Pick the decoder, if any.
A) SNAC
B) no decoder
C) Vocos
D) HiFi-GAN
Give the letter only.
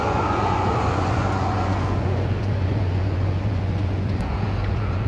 C